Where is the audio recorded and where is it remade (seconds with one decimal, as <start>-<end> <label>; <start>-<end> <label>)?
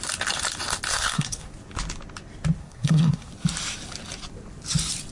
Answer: 0.0-0.9 recorded; 0.9-1.5 remade; 1.5-2.6 recorded; 2.6-3.3 remade; 3.3-5.1 recorded